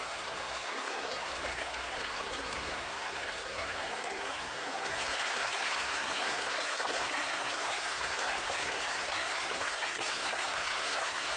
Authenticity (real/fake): fake